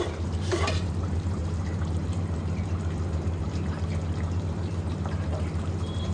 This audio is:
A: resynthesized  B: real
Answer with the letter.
A